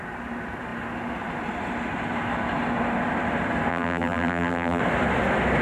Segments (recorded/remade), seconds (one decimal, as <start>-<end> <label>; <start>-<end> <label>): 0.0-3.7 recorded; 3.7-4.8 remade; 4.8-5.6 recorded